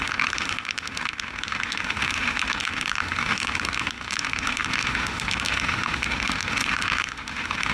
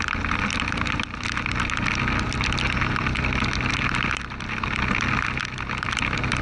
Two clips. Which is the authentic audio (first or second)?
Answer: second